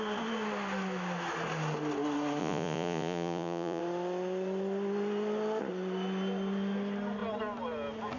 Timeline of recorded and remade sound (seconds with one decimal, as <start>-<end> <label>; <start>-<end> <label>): 0.0-2.4 recorded; 2.4-3.8 remade; 3.8-8.2 recorded